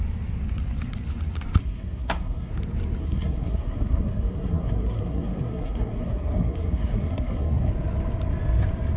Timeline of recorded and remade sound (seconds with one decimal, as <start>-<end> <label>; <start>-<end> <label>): 0.0-1.6 recorded; 1.6-2.5 remade; 2.5-3.0 recorded; 3.0-7.7 remade; 7.7-9.0 recorded